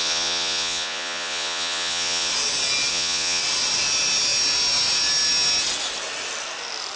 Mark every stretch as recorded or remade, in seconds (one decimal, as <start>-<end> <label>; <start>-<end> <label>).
0.0-2.3 remade; 2.3-2.9 recorded; 2.9-3.4 remade; 3.4-7.0 recorded